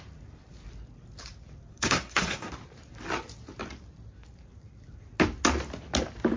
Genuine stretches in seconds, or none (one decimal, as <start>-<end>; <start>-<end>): 0.0-1.7; 2.5-6.4